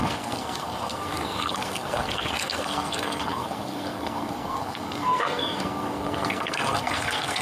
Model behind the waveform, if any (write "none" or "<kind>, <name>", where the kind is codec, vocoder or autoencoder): codec, SNAC